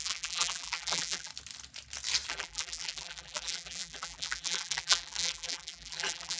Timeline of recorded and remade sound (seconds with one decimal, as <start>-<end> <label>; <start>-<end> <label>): 0.0-1.3 remade; 1.3-2.3 recorded; 2.3-6.4 remade